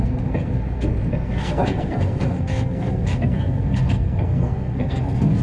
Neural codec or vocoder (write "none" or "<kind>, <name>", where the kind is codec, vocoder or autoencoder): codec, SNAC